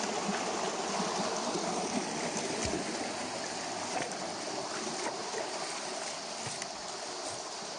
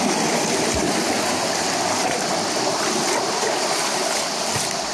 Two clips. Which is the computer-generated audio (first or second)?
second